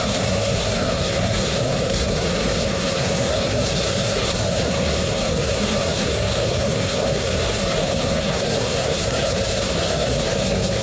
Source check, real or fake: fake